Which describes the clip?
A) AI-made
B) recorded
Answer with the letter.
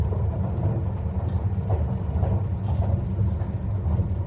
B